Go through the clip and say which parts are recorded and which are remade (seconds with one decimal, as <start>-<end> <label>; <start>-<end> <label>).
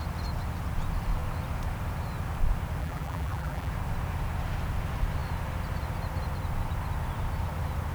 0.0-2.8 recorded; 2.8-3.7 remade; 3.7-7.9 recorded